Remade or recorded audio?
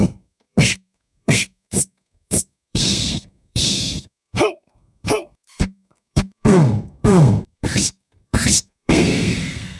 remade